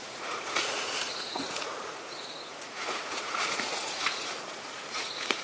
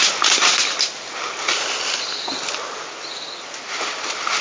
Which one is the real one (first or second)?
second